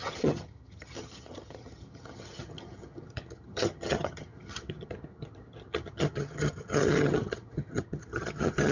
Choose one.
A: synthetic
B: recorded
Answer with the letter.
A